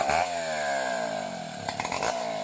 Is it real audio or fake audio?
real